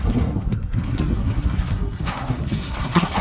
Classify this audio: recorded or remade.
remade